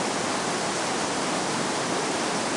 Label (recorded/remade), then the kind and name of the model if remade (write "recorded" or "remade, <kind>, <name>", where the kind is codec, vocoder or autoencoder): recorded